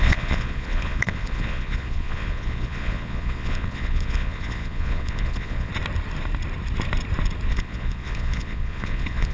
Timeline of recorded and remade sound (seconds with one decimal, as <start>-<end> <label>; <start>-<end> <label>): 0.0-5.7 remade; 5.7-7.5 recorded; 7.5-9.3 remade